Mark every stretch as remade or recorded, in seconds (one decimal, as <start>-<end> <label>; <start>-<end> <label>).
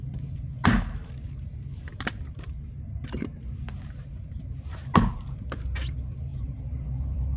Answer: 0.0-7.4 remade